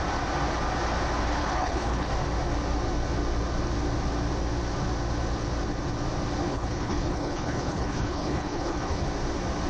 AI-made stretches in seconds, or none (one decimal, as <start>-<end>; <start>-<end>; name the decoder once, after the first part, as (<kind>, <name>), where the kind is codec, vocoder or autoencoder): 1.4-2.1 (codec, HILCodec); 6.5-9.0